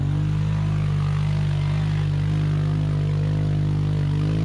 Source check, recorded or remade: recorded